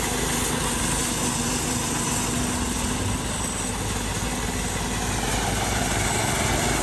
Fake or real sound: real